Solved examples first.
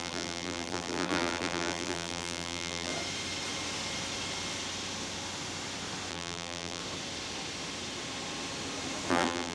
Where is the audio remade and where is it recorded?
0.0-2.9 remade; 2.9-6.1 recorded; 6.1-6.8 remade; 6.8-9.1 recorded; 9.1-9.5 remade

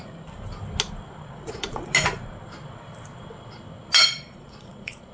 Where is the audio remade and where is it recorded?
0.0-1.3 recorded; 1.3-1.9 remade; 1.9-4.0 recorded; 4.0-5.1 remade

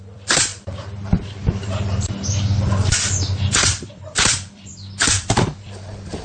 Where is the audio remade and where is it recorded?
0.0-0.5 remade; 0.5-3.9 recorded; 3.9-4.7 remade; 4.7-6.2 recorded

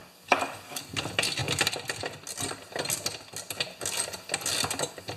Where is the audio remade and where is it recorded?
0.0-0.8 remade; 0.8-5.2 recorded

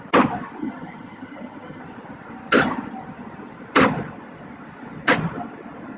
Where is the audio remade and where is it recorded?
0.0-0.6 recorded; 0.6-1.8 remade; 1.8-6.0 recorded

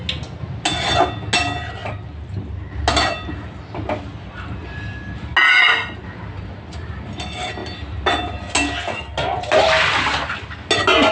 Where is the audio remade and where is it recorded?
0.0-11.1 recorded